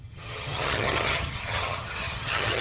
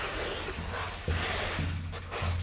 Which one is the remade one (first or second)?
first